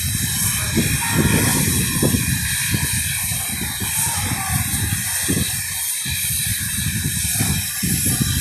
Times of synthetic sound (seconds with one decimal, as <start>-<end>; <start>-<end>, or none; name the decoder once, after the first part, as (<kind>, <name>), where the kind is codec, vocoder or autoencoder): 1.5-2.4 (vocoder, BigVGAN v2); 6.5-7.2